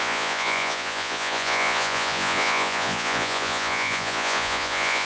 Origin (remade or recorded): remade